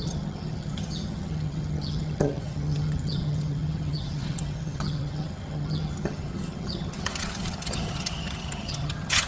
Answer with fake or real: fake